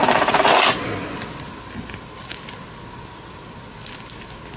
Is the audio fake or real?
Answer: real